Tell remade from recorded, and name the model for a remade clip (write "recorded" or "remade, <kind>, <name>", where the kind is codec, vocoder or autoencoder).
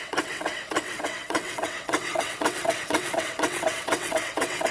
remade, vocoder, WaveNeXt